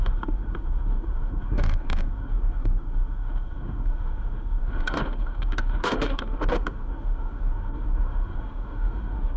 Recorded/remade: remade